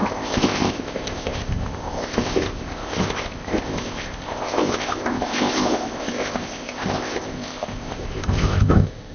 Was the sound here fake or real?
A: fake